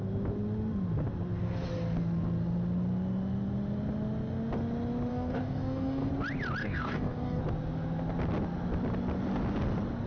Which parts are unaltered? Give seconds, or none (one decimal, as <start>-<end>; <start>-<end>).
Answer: 0.0-5.1; 6.1-6.6; 7.4-10.1